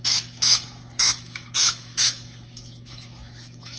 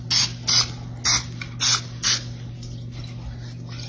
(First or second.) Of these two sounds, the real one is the second